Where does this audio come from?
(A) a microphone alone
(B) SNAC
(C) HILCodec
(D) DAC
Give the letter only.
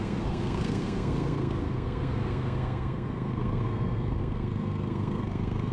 B